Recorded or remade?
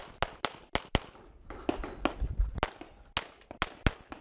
recorded